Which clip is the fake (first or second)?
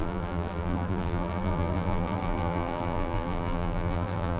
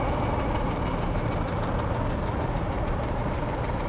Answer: first